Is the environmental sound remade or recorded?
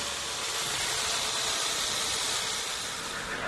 recorded